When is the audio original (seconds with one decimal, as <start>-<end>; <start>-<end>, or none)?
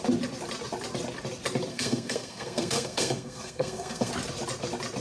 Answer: 0.0-1.7; 4.1-5.0